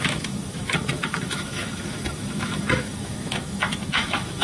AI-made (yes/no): yes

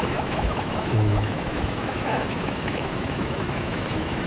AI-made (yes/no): yes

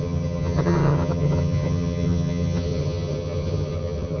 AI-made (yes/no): yes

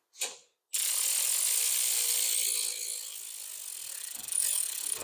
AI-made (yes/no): no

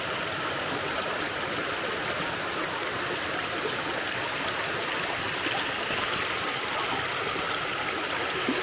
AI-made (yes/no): no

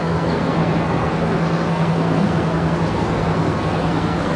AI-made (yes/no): yes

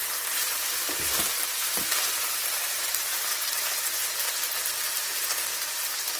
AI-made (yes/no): yes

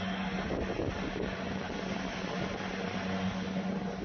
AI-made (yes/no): no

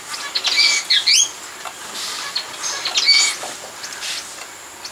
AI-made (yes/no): no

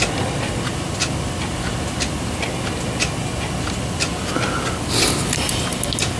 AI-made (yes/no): no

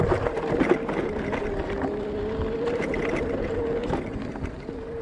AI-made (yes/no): no